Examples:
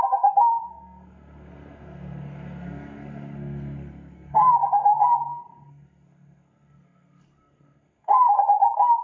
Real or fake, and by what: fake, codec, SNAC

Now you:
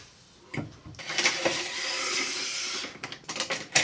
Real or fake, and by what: real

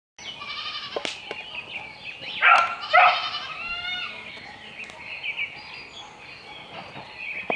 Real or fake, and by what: real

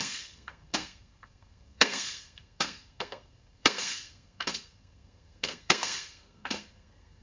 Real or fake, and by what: fake, codec, SNAC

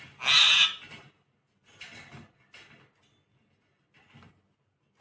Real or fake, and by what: real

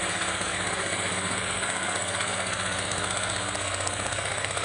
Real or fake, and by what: fake, codec, SNAC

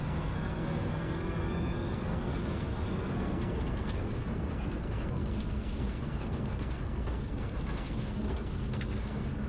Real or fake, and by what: fake, codec, SNAC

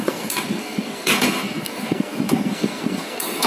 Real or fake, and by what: fake, codec, SNAC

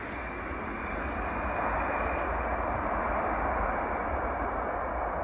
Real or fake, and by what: real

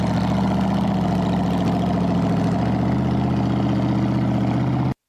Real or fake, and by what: real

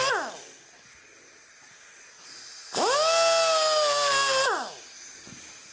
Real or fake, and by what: real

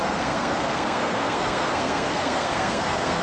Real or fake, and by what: fake, codec, SNAC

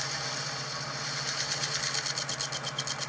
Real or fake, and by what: real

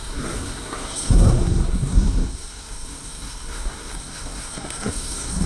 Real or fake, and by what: fake, codec, SNAC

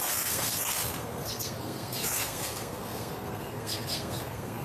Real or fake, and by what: fake, codec, SNAC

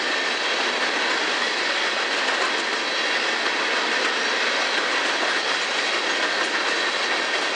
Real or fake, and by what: real